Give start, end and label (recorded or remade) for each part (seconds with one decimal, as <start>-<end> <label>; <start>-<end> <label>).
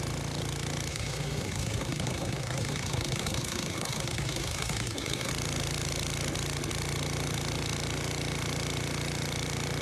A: 0.0-0.9 recorded; 0.9-5.3 remade; 5.3-9.8 recorded